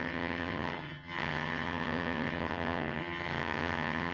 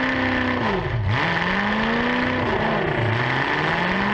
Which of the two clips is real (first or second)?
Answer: second